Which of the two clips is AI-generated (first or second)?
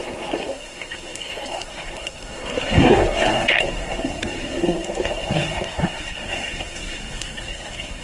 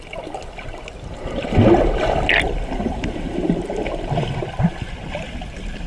first